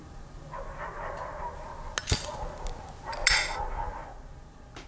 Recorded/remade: recorded